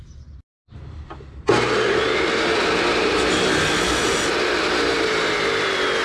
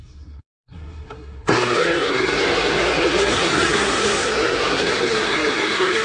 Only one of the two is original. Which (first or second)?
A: first